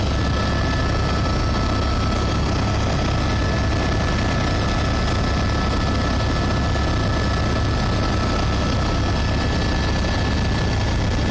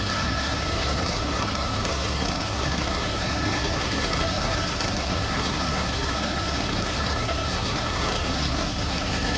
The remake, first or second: second